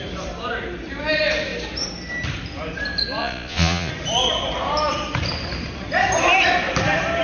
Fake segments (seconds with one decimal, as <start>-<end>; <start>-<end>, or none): 3.2-3.9